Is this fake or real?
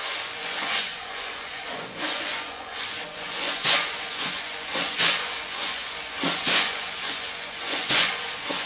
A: fake